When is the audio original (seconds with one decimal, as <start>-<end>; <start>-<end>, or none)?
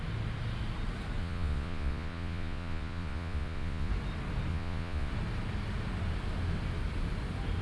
0.0-1.2; 3.9-4.5; 5.1-7.6